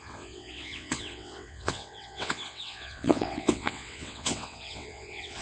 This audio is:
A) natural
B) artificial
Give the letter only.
B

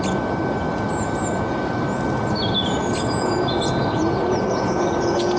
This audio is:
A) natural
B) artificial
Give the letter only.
A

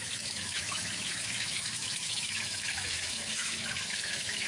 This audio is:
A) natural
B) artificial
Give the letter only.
B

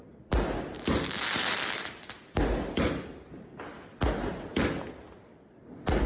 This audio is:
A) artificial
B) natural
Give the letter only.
B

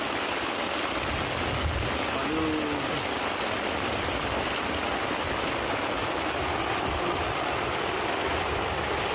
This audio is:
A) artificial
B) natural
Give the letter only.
B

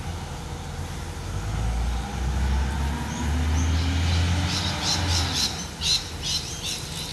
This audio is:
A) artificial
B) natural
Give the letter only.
B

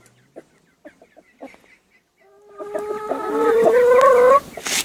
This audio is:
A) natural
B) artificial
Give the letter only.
A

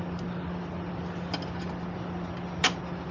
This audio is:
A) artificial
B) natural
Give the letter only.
B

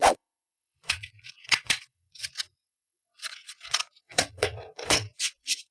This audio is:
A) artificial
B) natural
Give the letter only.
A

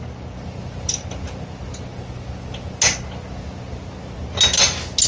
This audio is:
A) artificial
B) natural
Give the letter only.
B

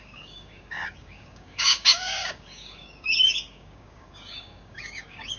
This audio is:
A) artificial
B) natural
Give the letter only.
A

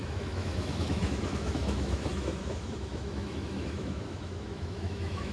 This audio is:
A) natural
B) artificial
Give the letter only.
B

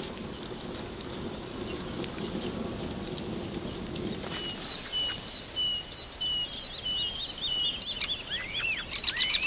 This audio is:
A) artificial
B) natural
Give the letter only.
B